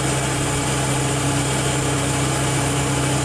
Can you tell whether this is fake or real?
real